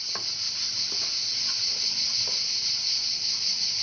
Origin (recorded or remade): recorded